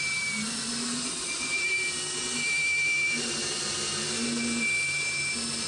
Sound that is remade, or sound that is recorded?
recorded